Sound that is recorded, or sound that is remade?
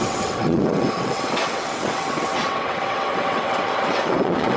remade